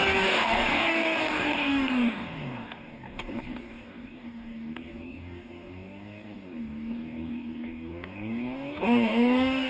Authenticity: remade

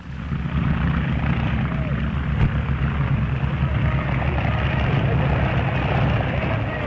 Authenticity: recorded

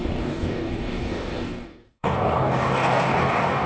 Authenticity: remade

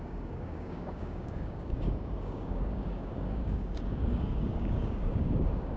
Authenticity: remade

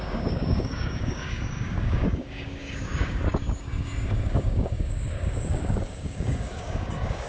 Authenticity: remade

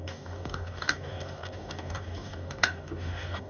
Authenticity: remade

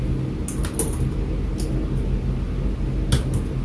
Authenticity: recorded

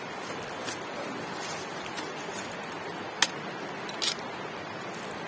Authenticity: recorded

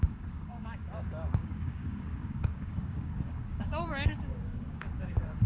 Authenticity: remade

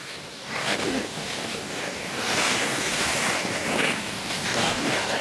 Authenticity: remade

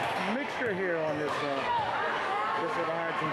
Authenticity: remade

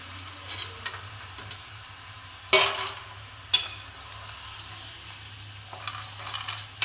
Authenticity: recorded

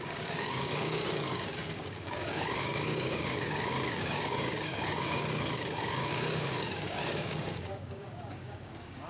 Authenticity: remade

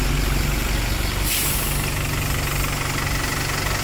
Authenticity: recorded